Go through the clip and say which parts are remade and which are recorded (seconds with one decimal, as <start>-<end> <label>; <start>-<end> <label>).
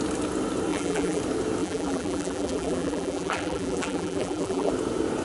0.0-0.7 recorded; 0.7-1.2 remade; 1.2-1.6 recorded; 1.6-4.7 remade; 4.7-5.2 recorded